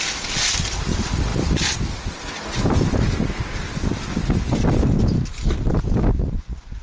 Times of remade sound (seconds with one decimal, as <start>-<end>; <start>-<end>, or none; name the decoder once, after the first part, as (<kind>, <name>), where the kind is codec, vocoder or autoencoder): 0.0-6.8 (vocoder, BigVGAN v2)